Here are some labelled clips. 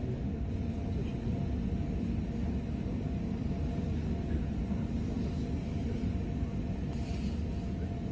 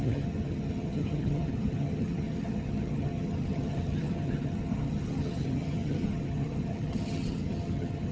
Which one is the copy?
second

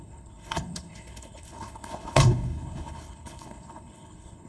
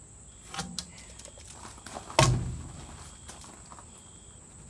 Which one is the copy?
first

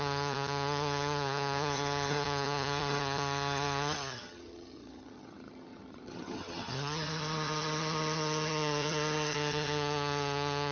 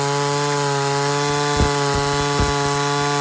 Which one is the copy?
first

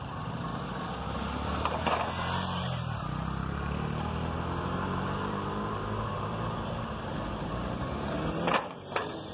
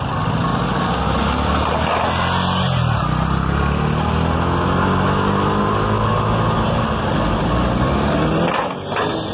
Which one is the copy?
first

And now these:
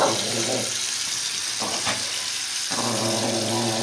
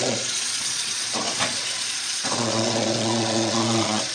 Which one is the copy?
second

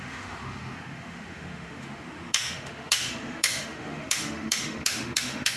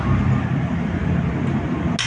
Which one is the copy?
first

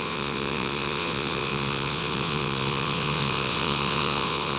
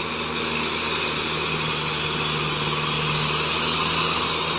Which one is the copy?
first